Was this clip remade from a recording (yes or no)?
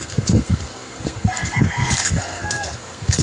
yes